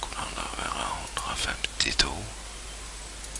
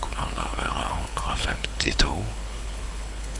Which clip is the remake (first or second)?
second